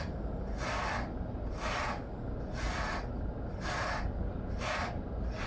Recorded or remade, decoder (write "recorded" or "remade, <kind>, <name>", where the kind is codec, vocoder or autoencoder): recorded